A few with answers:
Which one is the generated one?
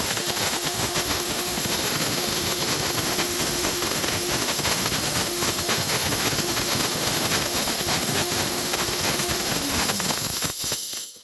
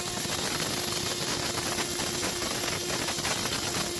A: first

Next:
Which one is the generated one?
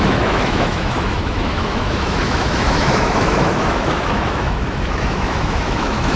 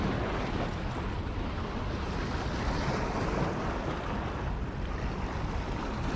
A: first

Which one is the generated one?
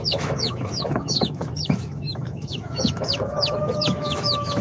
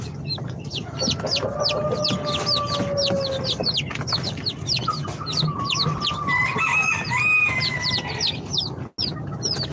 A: first